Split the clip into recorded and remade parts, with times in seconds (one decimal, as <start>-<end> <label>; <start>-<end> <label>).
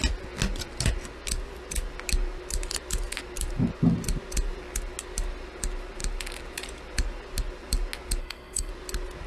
0.0-8.2 recorded; 8.2-8.7 remade; 8.7-9.3 recorded